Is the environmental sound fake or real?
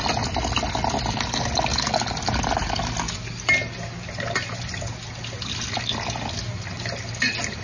real